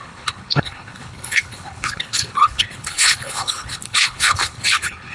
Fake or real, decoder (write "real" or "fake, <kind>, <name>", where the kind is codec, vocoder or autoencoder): fake, codec, HILCodec